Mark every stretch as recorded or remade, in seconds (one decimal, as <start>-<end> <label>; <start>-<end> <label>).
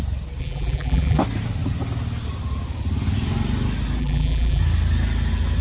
0.0-0.4 recorded; 0.4-1.2 remade; 1.2-4.0 recorded; 4.0-4.6 remade; 4.6-5.6 recorded